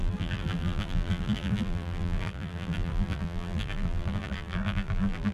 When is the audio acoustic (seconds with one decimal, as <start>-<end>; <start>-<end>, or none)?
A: none